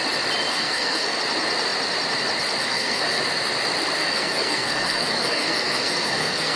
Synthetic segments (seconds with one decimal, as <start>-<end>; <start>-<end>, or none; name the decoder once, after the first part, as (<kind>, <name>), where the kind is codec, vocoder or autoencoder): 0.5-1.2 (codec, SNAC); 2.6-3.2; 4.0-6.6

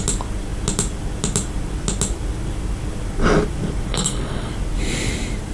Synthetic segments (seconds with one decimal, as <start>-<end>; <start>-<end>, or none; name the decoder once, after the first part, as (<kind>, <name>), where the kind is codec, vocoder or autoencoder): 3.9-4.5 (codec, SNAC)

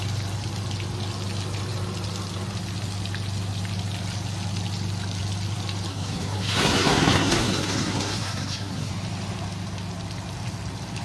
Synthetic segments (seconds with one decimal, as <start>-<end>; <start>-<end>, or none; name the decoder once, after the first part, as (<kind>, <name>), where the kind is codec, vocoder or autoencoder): 5.9-8.9 (codec, SNAC)

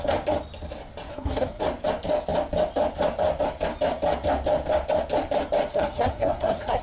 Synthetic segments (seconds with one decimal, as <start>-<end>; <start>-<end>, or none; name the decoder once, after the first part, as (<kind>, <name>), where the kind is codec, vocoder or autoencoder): 1.1-1.6 (codec, SNAC); 5.7-6.8

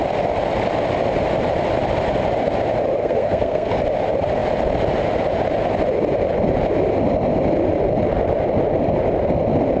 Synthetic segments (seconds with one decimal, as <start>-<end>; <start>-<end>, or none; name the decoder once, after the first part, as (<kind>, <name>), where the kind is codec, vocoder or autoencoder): 3.0-3.8 (codec, SNAC)

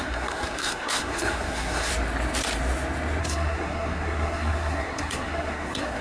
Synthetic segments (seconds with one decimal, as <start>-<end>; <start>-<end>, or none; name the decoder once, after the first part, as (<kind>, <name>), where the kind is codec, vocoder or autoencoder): 0.0-1.9 (codec, SNAC); 3.2-6.0